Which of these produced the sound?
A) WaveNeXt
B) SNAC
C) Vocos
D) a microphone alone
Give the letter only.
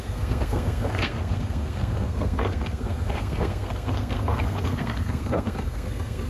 B